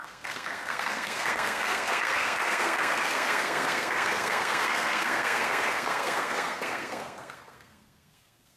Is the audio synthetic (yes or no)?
yes